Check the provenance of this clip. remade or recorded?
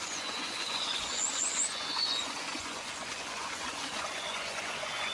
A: remade